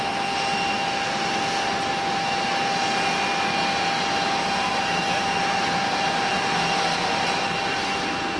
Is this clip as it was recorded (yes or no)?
yes